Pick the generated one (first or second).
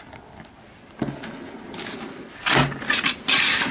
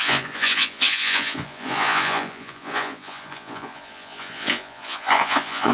second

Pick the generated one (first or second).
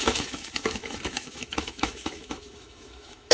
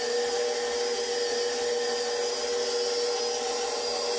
first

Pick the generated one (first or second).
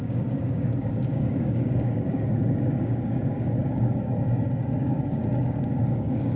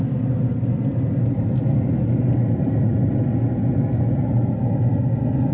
first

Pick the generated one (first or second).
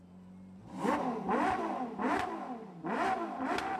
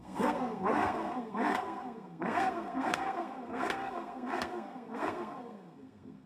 second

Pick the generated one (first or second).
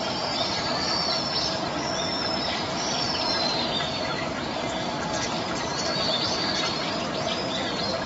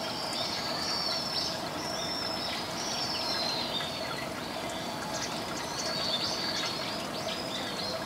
first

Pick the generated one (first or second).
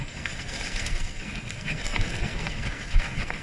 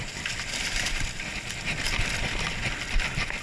first